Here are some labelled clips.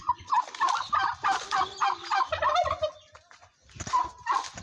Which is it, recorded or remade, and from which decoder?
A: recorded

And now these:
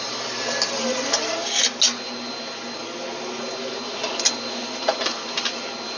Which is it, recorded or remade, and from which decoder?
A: recorded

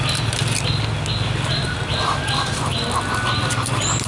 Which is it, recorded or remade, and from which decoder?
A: recorded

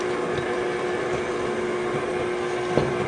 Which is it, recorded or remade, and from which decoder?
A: recorded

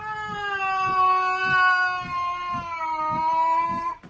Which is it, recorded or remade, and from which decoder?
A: recorded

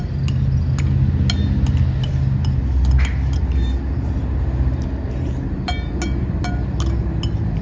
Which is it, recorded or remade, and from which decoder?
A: recorded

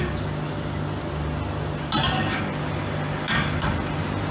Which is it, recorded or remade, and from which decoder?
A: recorded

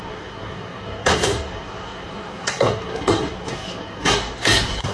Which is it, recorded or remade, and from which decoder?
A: remade, codec, SNAC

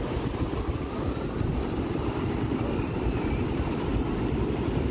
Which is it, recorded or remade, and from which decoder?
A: recorded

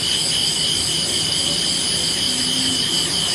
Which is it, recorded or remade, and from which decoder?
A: recorded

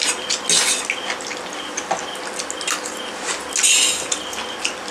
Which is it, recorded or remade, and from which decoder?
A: recorded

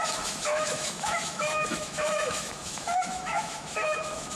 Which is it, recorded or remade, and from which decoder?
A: remade, autoencoder, DAC-VAE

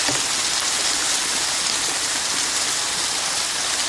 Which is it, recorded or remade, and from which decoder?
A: recorded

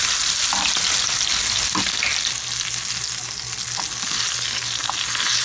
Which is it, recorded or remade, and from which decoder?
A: recorded